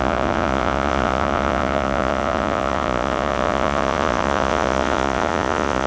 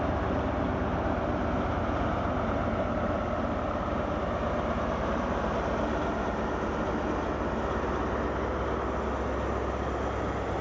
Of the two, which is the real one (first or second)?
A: second